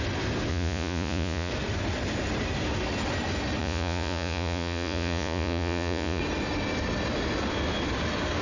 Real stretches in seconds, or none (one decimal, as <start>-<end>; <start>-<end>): 0.0-0.5; 1.5-3.6; 6.2-8.4